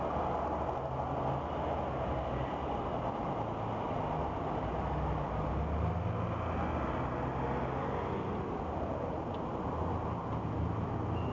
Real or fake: real